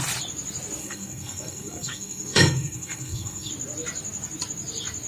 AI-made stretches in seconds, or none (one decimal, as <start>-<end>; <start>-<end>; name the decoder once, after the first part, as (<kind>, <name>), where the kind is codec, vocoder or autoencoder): 0.8-3.5 (codec, SNAC)